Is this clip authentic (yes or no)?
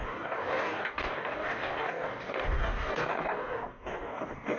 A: no